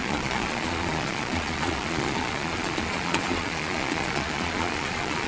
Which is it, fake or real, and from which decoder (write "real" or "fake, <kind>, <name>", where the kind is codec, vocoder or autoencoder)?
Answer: fake, vocoder, Vocos